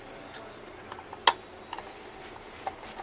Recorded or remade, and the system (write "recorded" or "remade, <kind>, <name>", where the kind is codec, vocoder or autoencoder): recorded